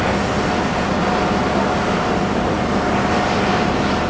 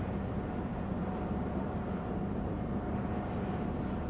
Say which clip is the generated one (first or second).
second